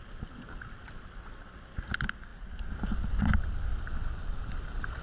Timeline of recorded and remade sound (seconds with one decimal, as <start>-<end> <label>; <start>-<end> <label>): 0.0-5.0 recorded